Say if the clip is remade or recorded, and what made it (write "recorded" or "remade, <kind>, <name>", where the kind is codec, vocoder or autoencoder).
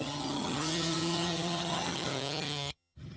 remade, vocoder, HiFi-GAN